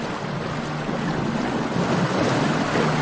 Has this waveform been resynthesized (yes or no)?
no